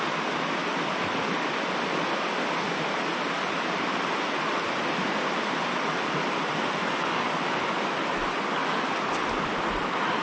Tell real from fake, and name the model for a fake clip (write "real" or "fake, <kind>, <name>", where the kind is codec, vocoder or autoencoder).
real